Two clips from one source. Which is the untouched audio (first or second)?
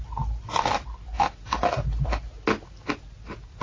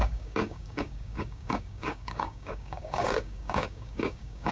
first